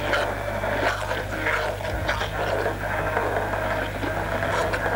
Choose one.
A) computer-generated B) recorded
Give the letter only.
B